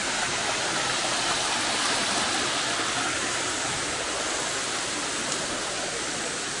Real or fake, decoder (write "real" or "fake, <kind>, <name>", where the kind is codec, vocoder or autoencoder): real